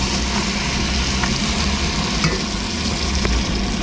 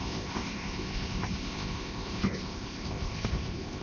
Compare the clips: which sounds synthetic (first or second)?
second